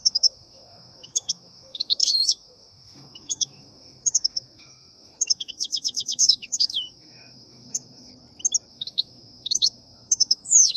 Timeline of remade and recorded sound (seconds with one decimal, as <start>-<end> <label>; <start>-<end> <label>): 0.0-8.1 remade; 8.1-8.7 recorded; 8.7-10.8 remade